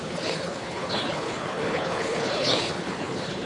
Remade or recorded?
remade